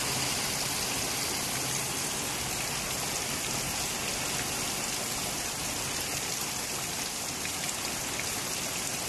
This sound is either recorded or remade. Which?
recorded